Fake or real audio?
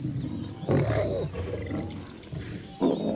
real